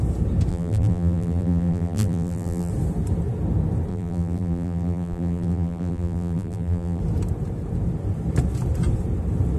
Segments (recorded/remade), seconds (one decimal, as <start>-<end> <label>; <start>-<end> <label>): 0.0-0.5 recorded; 0.5-2.7 remade; 2.7-3.9 recorded; 3.9-7.0 remade; 7.0-9.6 recorded